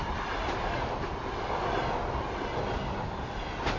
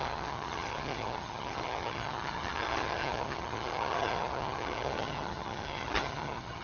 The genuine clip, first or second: first